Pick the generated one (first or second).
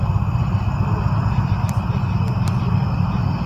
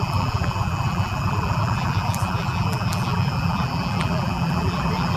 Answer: second